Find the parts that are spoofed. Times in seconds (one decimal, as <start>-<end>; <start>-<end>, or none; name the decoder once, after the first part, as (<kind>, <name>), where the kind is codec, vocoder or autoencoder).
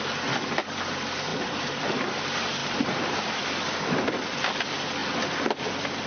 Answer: 1.3-2.1 (vocoder, BigVGAN v2); 2.6-3.4